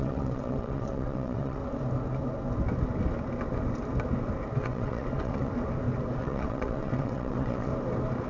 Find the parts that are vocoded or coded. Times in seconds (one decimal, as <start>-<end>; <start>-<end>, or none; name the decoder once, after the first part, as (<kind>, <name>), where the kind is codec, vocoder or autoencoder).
0.0-1.6 (vocoder, WaveNeXt); 4.6-5.5; 6.2-7.7

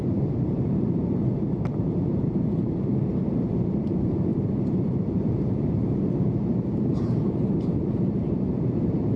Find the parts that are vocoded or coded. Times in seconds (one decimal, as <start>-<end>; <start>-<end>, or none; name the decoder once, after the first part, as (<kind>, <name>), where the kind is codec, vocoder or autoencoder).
0.0-9.2 (vocoder, BigVGAN v2)

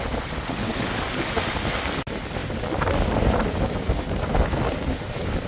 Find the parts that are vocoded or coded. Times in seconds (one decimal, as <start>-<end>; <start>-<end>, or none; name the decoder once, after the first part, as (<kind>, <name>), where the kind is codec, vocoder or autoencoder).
none

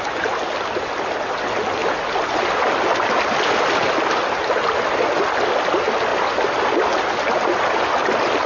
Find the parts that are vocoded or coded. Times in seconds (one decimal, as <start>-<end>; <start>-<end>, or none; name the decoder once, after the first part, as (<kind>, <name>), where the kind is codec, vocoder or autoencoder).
none